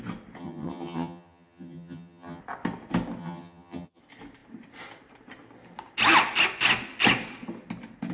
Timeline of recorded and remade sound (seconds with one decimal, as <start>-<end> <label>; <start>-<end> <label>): 0.0-0.4 recorded; 0.4-2.4 remade; 2.4-3.2 recorded; 3.2-4.0 remade; 4.0-8.1 recorded